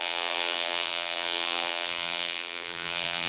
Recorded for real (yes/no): no